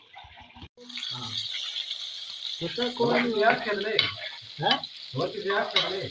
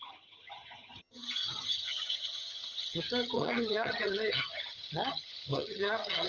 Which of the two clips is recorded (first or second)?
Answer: first